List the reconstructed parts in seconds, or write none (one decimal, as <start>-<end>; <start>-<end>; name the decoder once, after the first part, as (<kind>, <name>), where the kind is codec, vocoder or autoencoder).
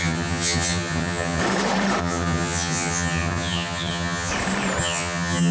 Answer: 0.0-1.4 (vocoder, HiFi-GAN); 2.0-4.3; 4.8-5.5